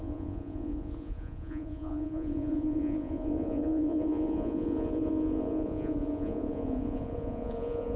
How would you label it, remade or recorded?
remade